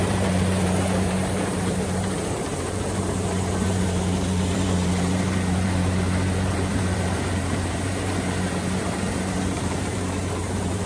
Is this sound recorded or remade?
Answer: remade